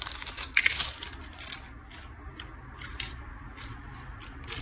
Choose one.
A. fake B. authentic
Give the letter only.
B